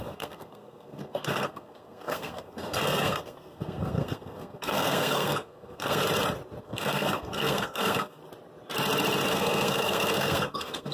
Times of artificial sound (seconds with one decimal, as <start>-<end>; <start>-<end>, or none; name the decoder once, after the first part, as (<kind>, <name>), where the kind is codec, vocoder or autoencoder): 0.0-6.0 (codec, SNAC); 6.6-8.2; 9.3-10.9